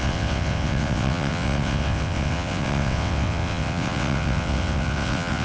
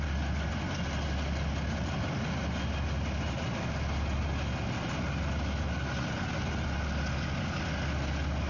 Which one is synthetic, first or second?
first